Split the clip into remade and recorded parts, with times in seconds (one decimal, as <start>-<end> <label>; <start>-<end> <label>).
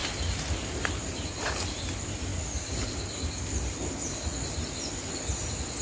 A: 0.0-5.8 recorded